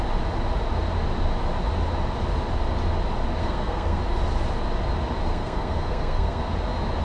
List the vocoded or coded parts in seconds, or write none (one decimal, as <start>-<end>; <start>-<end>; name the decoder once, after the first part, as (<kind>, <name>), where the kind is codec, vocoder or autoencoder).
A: 3.4-4.0 (codec, SNAC); 5.3-6.4